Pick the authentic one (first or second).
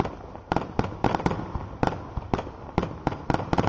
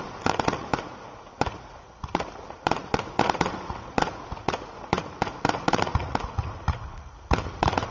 first